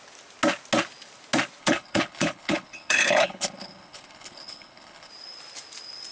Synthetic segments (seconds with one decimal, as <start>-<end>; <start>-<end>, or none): 1.6-5.1